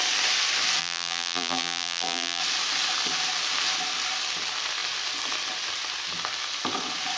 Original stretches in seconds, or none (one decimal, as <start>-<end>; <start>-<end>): 0.0-0.8; 2.4-7.2